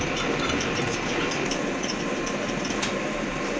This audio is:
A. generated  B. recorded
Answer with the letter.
A